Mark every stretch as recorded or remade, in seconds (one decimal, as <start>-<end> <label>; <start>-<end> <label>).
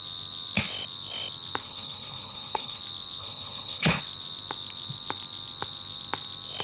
0.0-1.6 recorded; 1.6-2.8 remade; 2.8-3.2 recorded; 3.2-4.0 remade; 4.0-6.6 recorded